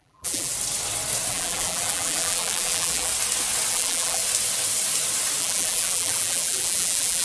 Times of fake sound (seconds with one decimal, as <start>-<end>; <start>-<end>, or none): 0.0-0.5; 1.3-3.1; 3.7-4.2; 5.4-7.2